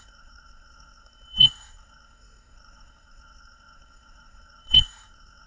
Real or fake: fake